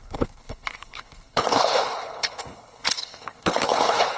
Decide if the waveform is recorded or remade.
remade